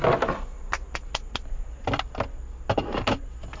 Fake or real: real